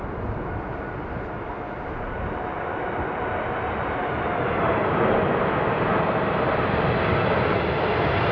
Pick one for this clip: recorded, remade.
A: recorded